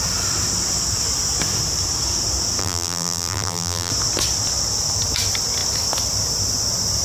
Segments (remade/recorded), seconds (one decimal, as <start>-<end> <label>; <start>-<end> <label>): 0.0-2.6 recorded; 2.6-3.9 remade; 3.9-7.0 recorded